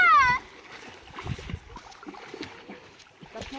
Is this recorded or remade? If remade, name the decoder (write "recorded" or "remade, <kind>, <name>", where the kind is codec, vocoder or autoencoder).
recorded